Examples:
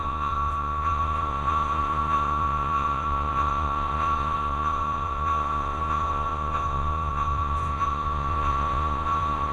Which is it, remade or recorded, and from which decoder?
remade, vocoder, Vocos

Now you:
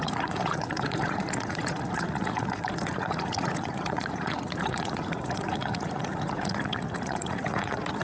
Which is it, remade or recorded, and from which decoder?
remade, vocoder, Vocos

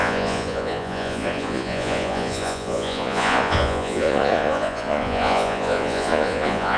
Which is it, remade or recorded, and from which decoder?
remade, vocoder, Vocos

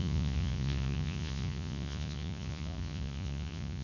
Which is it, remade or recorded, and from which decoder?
remade, vocoder, Vocos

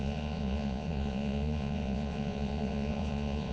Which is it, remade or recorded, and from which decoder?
remade, vocoder, Vocos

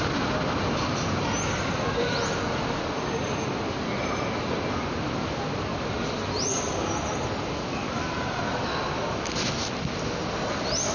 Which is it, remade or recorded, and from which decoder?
recorded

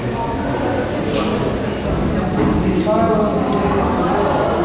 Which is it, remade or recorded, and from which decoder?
recorded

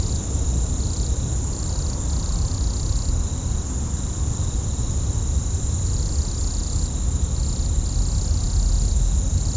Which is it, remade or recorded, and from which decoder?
recorded